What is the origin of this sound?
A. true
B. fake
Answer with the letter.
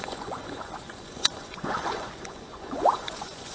B